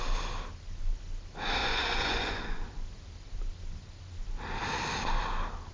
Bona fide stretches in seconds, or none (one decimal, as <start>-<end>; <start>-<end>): 0.0-1.6; 2.6-5.7